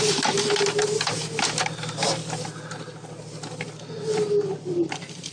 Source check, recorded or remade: recorded